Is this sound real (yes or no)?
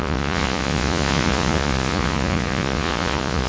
no